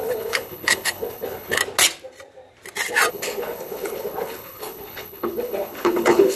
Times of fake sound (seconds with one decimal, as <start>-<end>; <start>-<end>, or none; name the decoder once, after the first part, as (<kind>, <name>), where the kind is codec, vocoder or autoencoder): 0.0-1.6 (codec, HILCodec); 3.1-6.4